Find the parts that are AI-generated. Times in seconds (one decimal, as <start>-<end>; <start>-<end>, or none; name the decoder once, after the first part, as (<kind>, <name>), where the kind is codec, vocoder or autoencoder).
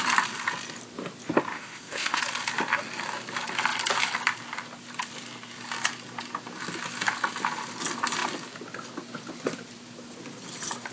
1.5-2.2 (codec, ZipCodec)